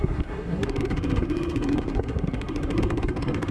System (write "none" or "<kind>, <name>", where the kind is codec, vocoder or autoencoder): codec, SNAC